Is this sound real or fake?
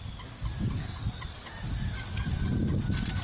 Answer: real